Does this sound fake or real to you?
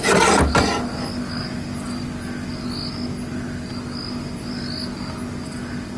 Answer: real